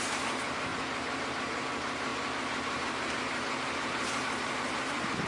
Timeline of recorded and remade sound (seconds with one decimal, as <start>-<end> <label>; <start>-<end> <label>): 0.0-0.7 remade; 0.7-1.2 recorded; 1.2-5.3 remade

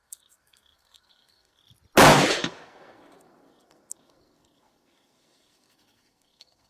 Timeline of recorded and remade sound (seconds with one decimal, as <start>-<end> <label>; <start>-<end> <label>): 0.0-1.6 remade; 1.6-2.3 recorded; 2.3-6.7 remade

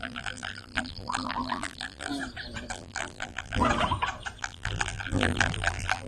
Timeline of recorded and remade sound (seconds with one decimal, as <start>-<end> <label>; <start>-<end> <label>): 0.0-2.1 remade; 2.1-2.7 recorded; 2.7-3.6 remade; 3.6-4.4 recorded; 4.4-6.1 remade

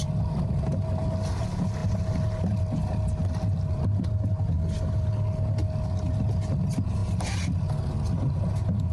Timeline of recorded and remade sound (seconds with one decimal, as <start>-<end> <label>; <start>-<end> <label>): 0.0-8.9 recorded

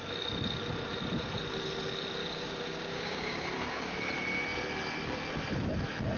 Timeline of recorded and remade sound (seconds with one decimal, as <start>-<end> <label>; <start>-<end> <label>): 0.0-2.2 recorded; 2.2-3.9 remade; 3.9-6.2 recorded